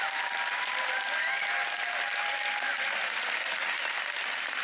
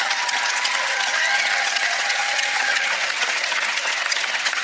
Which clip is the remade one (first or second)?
second